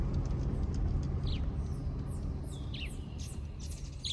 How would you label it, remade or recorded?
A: recorded